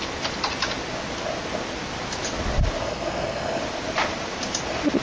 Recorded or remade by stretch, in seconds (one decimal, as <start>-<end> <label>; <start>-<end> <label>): 0.0-2.8 recorded; 2.8-3.6 remade; 3.6-5.0 recorded